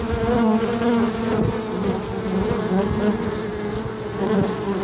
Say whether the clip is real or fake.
real